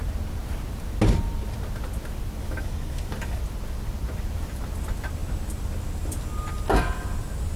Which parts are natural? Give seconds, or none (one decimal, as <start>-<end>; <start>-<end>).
0.0-2.4; 3.4-7.6

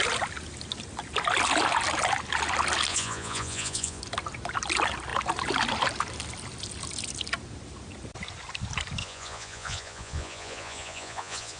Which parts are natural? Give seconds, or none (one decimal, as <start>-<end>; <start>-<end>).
0.0-2.9; 4.0-9.0

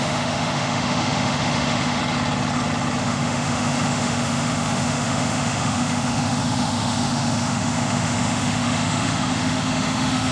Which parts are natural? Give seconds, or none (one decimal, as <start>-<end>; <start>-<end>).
2.0-3.0

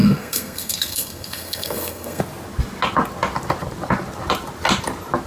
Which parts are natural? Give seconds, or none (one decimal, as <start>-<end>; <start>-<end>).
2.2-5.3